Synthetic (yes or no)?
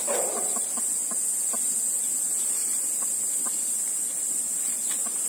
no